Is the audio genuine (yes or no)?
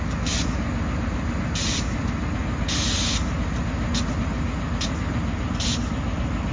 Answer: yes